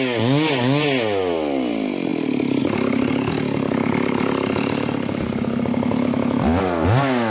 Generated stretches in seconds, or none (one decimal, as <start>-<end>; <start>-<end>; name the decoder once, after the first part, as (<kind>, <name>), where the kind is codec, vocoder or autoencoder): none